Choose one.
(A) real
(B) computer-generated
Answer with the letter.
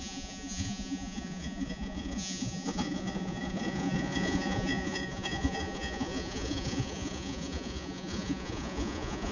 B